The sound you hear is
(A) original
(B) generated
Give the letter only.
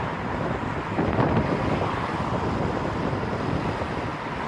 A